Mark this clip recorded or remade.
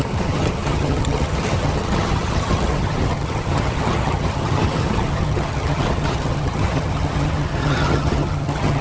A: remade